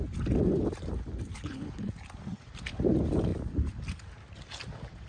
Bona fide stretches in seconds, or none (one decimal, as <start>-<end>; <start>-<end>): 0.0-1.3; 1.9-5.1